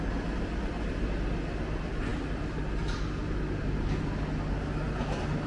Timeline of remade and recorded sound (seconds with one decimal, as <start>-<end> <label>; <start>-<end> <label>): 0.0-5.5 recorded